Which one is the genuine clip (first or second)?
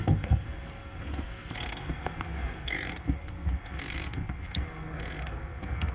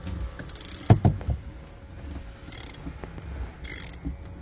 second